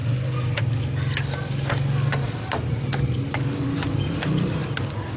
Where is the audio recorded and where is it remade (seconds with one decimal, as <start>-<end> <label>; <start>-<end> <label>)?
0.0-5.2 recorded